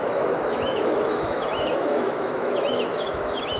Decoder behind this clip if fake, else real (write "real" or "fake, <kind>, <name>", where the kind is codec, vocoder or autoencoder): fake, autoencoder, DAC-VAE